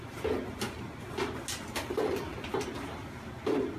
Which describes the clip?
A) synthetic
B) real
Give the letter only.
B